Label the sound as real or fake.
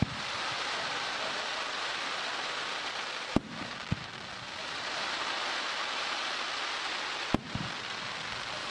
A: fake